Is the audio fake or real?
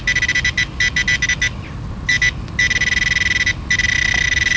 real